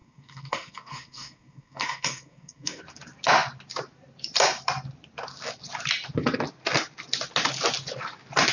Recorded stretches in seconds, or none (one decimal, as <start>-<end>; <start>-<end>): 2.8-8.5